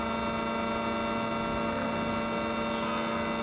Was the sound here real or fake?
real